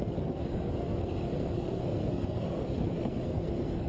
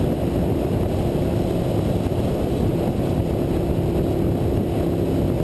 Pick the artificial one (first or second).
first